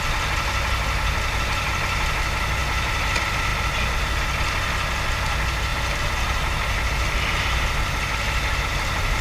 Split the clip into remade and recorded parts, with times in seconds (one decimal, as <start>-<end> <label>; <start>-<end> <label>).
0.0-2.6 recorded; 2.6-3.1 remade; 3.1-9.2 recorded